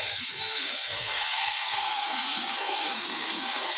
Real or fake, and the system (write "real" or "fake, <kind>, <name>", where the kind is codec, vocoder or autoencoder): fake, codec, SNAC